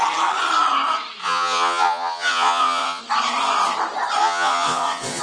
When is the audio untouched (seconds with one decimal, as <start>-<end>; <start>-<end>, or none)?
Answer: 0.0-1.2; 3.0-4.2